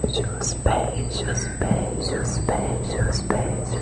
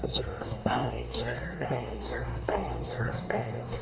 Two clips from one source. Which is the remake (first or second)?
second